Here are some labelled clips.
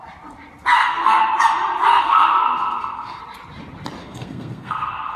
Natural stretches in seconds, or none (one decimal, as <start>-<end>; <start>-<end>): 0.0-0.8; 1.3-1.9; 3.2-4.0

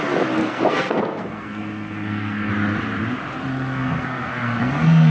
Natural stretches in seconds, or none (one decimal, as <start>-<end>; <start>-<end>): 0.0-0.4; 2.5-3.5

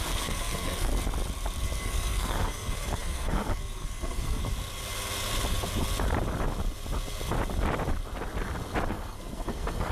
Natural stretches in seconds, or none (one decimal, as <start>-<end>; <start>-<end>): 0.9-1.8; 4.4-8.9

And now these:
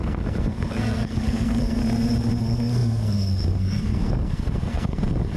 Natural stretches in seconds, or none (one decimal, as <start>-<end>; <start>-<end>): 1.8-2.4

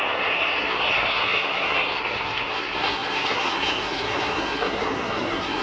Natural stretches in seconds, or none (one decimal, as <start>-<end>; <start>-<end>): none